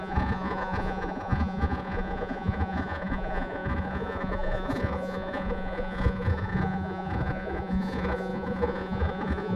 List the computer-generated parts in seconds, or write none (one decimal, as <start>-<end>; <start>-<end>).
0.0-9.6